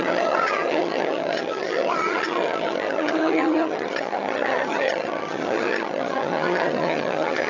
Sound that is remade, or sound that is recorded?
remade